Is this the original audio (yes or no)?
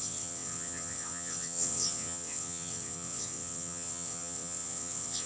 no